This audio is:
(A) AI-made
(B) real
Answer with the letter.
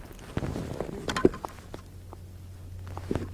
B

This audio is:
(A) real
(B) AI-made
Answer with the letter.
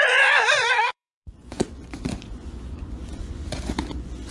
B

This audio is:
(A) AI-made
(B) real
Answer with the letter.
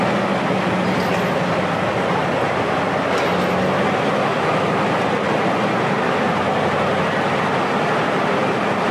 B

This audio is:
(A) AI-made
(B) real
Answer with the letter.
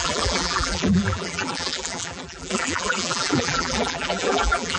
A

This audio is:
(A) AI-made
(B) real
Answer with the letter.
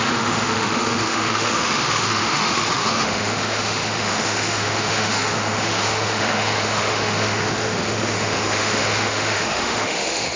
A